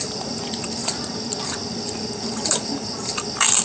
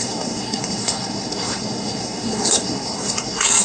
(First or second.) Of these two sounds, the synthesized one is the second